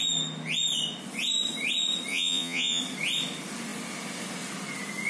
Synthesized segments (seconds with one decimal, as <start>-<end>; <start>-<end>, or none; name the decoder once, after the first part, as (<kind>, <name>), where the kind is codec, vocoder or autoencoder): 2.1-2.8 (vocoder, Vocos)